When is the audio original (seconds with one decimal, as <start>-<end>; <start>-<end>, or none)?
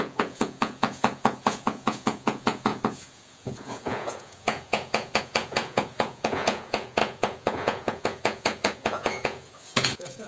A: none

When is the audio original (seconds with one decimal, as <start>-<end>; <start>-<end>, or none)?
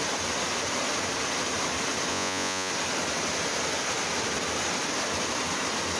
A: 0.0-2.1; 2.7-6.0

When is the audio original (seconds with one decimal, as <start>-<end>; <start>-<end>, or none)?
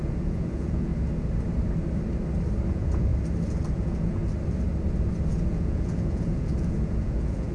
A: 0.9-2.7; 3.1-3.7; 4.2-5.3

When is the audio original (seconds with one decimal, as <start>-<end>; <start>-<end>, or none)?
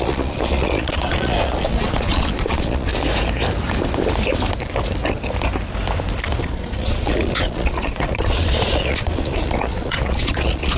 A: 2.9-6.4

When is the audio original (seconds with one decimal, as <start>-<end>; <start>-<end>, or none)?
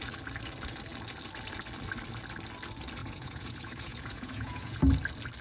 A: 0.0-3.0; 4.8-5.4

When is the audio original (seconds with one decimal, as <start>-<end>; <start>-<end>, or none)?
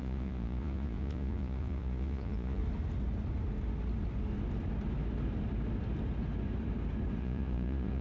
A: 2.6-7.2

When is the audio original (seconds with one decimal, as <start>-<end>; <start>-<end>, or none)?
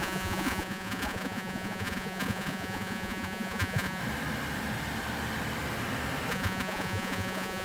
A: 4.0-6.3